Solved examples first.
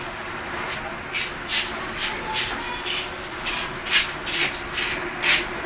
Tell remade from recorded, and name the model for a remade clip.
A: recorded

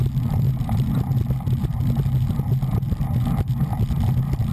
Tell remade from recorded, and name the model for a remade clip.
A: recorded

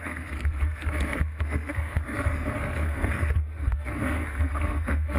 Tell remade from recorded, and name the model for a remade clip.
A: remade, codec, SNAC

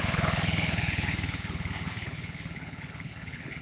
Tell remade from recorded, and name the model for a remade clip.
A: remade, codec, HILCodec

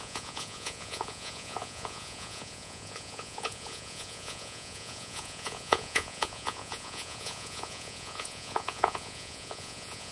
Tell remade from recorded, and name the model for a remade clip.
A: remade, vocoder, Vocos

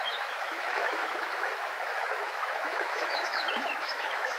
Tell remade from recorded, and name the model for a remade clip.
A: remade, autoencoder, DAC-VAE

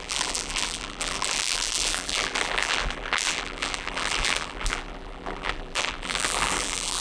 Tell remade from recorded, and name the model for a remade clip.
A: remade, vocoder, BigVGAN v2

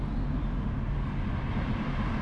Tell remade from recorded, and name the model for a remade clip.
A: recorded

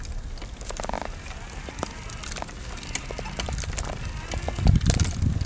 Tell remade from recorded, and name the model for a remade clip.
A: recorded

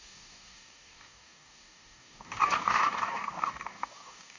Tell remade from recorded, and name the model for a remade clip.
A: remade, codec, DAC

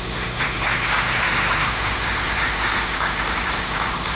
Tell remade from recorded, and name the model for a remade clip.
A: remade, autoencoder, DAC-VAE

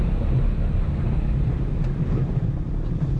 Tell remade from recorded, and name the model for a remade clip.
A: recorded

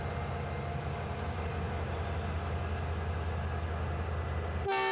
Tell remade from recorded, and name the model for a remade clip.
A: recorded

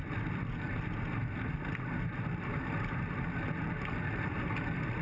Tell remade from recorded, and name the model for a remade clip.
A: recorded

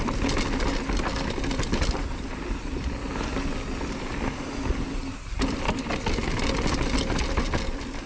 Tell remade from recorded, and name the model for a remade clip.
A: recorded